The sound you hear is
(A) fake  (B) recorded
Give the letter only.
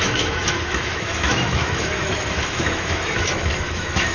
A